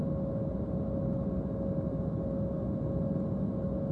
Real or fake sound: real